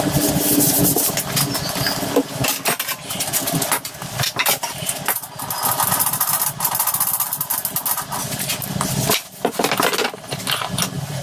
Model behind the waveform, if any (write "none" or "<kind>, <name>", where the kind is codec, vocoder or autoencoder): none